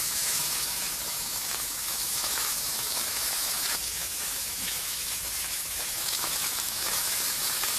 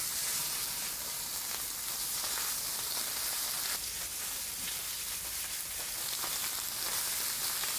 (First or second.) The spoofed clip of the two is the first